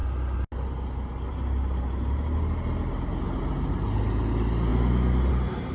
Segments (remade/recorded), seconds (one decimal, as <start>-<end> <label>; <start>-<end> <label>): 0.0-5.7 recorded